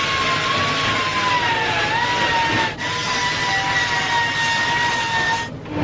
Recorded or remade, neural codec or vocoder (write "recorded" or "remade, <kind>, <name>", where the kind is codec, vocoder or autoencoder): recorded